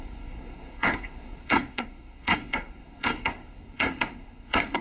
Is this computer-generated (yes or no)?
yes